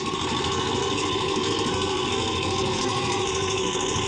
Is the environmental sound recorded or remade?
remade